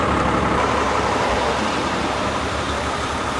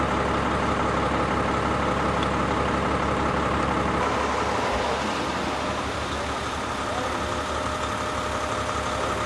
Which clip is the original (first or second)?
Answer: second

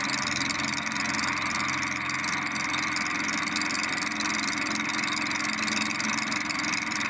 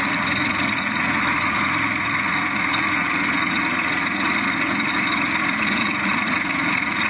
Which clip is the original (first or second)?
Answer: first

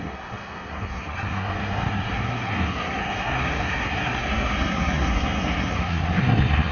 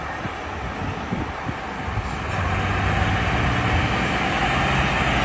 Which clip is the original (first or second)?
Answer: second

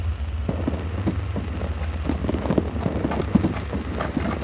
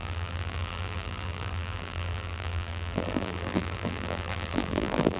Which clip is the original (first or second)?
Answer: first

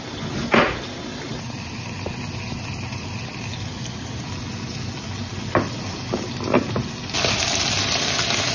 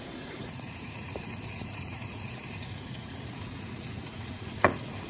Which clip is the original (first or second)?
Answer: first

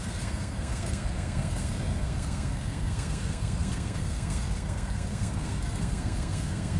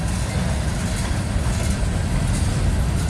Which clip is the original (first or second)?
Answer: second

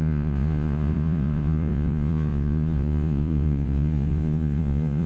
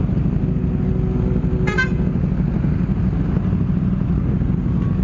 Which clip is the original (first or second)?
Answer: second